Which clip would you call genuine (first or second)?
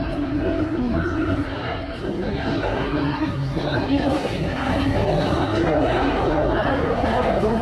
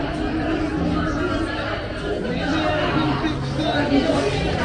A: second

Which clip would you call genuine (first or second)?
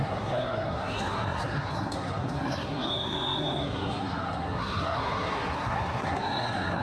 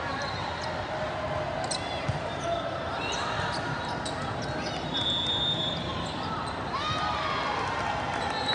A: second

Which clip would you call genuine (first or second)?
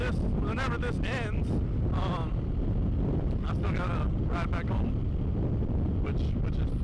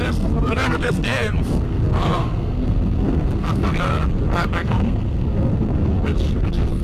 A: first